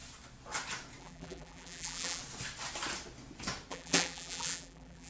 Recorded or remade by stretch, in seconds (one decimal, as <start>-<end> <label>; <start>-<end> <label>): 0.0-1.0 recorded; 1.0-2.2 remade; 2.2-3.7 recorded; 3.7-5.1 remade